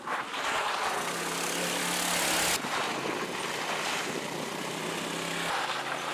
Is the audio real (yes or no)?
yes